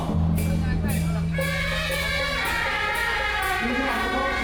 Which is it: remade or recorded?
recorded